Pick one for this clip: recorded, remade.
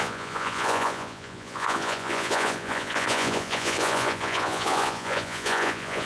remade